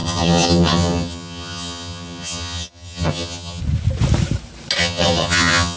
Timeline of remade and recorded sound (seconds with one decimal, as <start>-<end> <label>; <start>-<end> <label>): 0.0-3.6 remade; 3.6-4.8 recorded; 4.8-5.8 remade